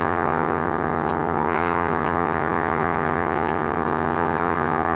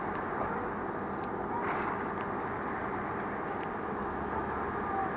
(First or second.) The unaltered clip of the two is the second